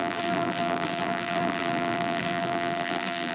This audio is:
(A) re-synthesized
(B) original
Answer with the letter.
A